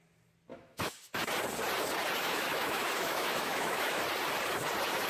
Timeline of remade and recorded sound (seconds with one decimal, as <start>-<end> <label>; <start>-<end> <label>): 0.0-0.5 recorded; 0.5-1.1 remade; 1.1-2.2 recorded; 2.2-4.0 remade; 4.0-5.1 recorded